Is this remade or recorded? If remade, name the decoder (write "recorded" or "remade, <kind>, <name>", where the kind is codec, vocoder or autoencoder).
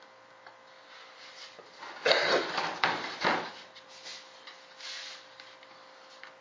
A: recorded